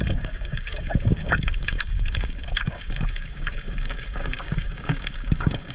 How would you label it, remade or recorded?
remade